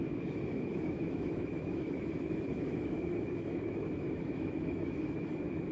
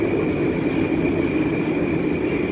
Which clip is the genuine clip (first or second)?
second